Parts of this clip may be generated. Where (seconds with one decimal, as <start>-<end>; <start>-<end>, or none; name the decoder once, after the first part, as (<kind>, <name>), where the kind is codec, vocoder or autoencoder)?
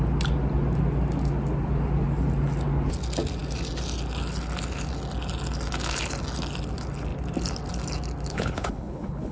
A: 8.3-9.3 (codec, HILCodec)